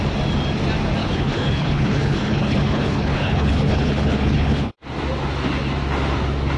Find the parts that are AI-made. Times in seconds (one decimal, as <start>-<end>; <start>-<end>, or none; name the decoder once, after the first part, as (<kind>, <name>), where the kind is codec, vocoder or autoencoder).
1.0-4.7 (codec, HILCodec)